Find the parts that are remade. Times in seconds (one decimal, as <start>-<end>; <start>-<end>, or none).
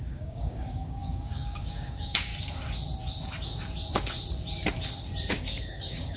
0.0-2.3; 5.3-6.2